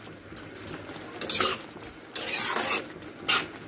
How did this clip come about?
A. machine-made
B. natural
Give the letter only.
B